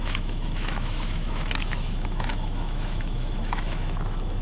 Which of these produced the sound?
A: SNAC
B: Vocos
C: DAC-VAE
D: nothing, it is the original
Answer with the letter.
C